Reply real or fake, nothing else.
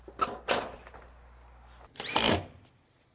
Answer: real